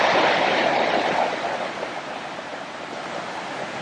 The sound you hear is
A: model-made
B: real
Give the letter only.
B